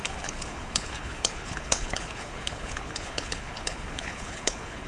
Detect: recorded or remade remade